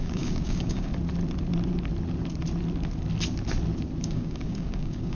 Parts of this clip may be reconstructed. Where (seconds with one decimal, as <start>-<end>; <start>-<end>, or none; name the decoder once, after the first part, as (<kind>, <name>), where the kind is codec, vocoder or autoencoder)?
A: 0.0-0.9 (codec, DAC); 4.0-5.1